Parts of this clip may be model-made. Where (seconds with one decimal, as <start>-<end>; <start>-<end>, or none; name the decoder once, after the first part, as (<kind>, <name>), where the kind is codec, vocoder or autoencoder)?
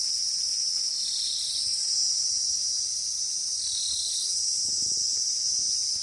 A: 0.0-0.5 (vocoder, BigVGAN v2); 2.2-2.6; 4.8-6.0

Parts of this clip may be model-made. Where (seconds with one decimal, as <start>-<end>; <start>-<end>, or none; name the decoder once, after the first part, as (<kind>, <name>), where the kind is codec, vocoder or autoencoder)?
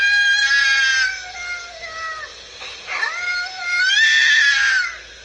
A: none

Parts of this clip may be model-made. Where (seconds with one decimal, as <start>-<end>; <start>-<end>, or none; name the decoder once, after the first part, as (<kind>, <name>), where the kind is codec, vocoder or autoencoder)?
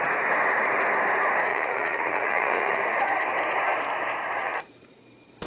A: 1.5-2.8 (vocoder, Vocos); 4.4-5.0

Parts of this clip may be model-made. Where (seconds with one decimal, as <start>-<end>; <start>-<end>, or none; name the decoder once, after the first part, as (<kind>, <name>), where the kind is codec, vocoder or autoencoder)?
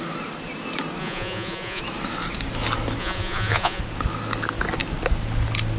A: 1.0-1.8 (vocoder, Vocos); 3.0-3.8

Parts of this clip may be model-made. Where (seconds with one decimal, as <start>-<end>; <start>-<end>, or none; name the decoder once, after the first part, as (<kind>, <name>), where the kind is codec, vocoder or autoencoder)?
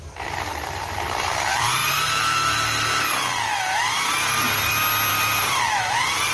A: 5.1-5.6 (vocoder, BigVGAN v2)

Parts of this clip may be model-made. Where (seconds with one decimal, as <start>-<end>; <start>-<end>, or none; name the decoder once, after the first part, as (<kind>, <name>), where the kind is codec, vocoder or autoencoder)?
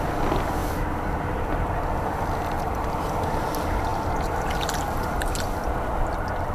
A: 3.9-4.5 (vocoder, BigVGAN v2)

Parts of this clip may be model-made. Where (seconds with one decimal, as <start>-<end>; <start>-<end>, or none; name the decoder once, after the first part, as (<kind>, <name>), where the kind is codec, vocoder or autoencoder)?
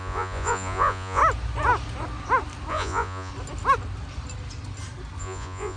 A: 0.0-1.2 (vocoder, Vocos); 2.7-3.3; 5.2-5.8